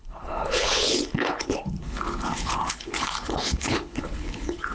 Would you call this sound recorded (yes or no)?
no